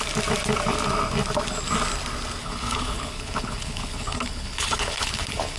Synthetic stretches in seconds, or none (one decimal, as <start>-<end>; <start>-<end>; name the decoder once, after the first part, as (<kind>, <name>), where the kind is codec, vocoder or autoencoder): 2.4-5.6 (codec, HILCodec)